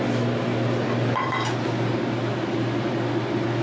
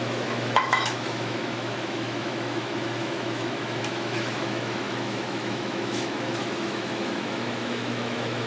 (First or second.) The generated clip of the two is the second